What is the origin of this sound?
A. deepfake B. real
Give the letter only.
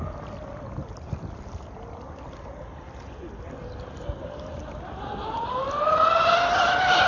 B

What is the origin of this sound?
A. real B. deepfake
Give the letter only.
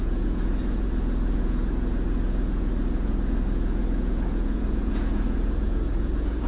B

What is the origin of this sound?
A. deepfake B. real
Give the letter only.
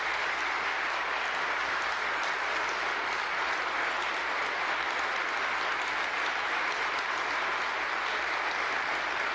B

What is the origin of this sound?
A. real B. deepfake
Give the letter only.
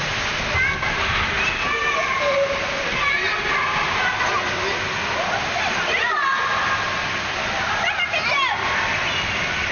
A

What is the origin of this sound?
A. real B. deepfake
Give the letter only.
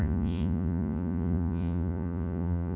B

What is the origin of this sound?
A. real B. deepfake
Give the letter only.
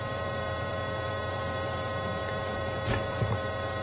B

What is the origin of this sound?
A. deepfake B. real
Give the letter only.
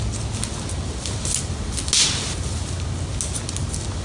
B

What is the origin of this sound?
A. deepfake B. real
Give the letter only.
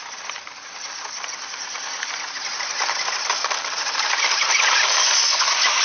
B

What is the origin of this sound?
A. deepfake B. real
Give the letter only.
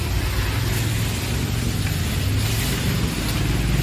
B